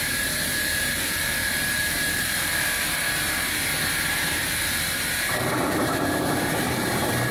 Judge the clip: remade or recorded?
remade